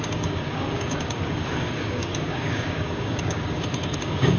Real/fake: fake